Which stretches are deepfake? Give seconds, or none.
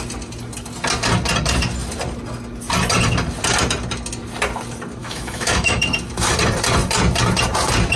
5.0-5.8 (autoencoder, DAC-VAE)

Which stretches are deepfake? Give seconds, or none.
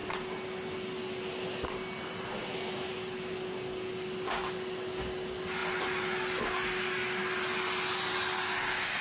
none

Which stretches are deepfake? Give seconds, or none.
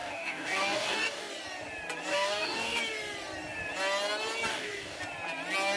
0.0-1.3 (codec, DAC); 2.1-2.8; 4.5-5.0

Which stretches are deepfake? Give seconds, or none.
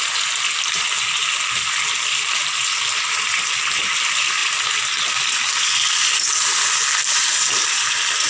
none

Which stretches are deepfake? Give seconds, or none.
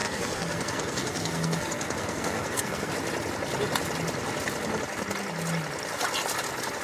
0.0-2.9 (codec, SNAC)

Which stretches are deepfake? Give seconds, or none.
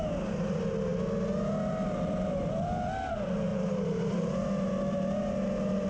3.5-4.3 (vocoder, BigVGAN v2)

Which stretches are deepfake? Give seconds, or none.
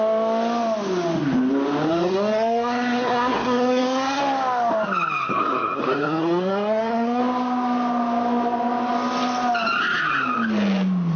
1.9-4.2 (codec, SNAC); 5.3-7.2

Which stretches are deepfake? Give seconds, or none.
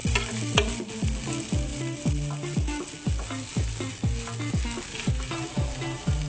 4.9-6.3 (vocoder, BigVGAN v2)